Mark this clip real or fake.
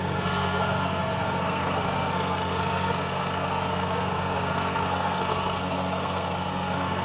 fake